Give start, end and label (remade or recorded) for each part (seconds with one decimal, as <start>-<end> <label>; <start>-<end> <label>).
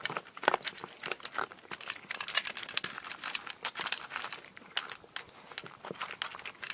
0.0-6.7 recorded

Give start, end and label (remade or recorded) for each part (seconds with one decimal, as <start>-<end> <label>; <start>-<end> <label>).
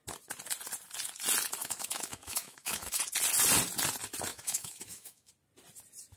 0.0-1.6 recorded; 1.6-3.0 remade; 3.0-4.3 recorded; 4.3-5.3 remade; 5.3-6.2 recorded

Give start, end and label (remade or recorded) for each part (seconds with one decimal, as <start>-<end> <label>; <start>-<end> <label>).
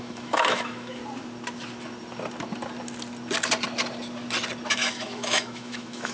0.0-1.0 remade; 1.0-4.7 recorded; 4.7-6.1 remade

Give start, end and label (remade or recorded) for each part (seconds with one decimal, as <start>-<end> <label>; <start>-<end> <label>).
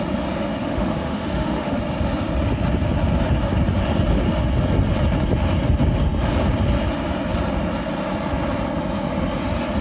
0.0-0.6 recorded; 0.6-1.8 remade; 1.8-9.8 recorded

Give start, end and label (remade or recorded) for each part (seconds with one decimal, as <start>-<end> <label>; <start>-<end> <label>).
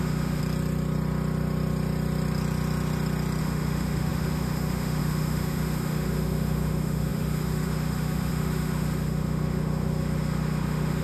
0.0-0.4 remade; 0.4-3.4 recorded; 3.4-11.0 remade